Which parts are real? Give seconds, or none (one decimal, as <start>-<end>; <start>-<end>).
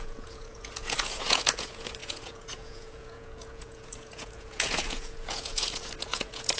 none